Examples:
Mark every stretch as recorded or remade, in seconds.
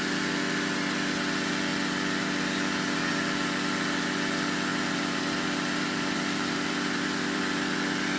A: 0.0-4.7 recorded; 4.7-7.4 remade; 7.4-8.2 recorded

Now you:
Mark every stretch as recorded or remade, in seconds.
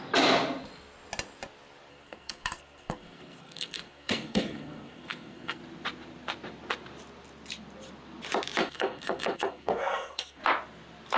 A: 0.0-1.9 recorded; 1.9-5.6 remade; 5.6-8.6 recorded; 8.6-10.4 remade; 10.4-11.2 recorded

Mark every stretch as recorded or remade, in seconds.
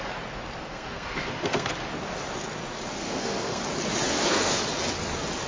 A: 0.0-0.6 recorded; 0.6-1.7 remade; 1.7-2.9 recorded; 2.9-3.6 remade; 3.6-4.1 recorded; 4.1-4.6 remade; 4.6-5.5 recorded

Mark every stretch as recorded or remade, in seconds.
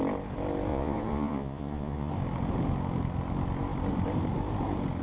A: 0.0-0.7 recorded; 0.7-2.1 remade; 2.1-5.0 recorded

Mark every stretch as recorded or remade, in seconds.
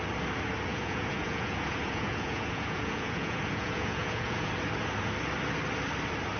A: 0.0-0.7 recorded; 0.7-4.5 remade; 4.5-6.4 recorded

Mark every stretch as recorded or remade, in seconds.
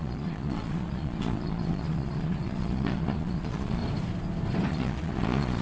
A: 0.0-3.8 remade; 3.8-4.7 recorded; 4.7-5.6 remade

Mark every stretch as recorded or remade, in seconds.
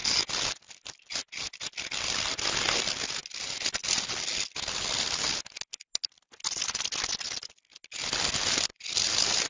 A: 0.0-9.5 recorded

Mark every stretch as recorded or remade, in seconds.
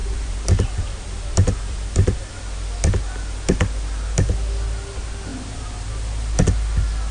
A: 0.0-2.3 remade; 2.3-5.3 recorded; 5.3-5.9 remade; 5.9-7.1 recorded